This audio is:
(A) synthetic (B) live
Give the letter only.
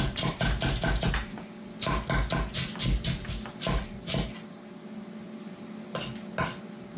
B